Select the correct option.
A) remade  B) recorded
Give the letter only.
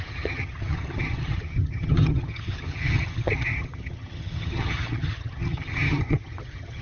A